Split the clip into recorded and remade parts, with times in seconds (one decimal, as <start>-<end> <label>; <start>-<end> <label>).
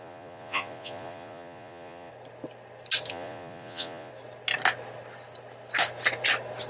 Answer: 0.0-2.1 remade; 2.1-3.1 recorded; 3.1-4.1 remade; 4.1-6.7 recorded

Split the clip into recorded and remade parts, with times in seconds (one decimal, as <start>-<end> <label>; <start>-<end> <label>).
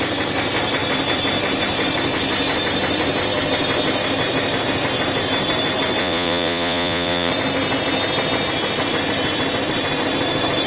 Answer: 0.0-6.0 recorded; 6.0-7.3 remade; 7.3-10.7 recorded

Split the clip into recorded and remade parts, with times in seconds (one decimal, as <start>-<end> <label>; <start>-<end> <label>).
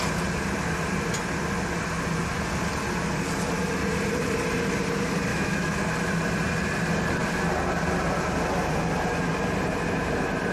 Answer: 0.0-5.3 recorded; 5.3-5.8 remade; 5.8-10.5 recorded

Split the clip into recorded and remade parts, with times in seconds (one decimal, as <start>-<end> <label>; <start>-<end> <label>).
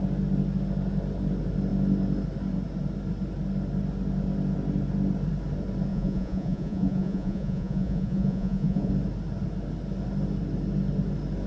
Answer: 0.0-5.9 recorded; 5.9-8.9 remade; 8.9-11.5 recorded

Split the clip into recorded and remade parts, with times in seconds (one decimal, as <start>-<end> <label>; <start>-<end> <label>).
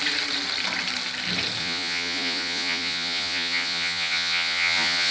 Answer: 0.0-1.6 recorded; 1.6-5.1 remade